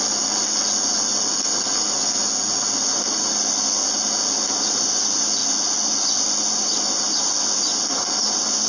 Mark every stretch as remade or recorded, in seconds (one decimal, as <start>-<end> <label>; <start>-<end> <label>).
0.0-8.7 recorded